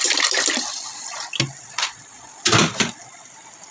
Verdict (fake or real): real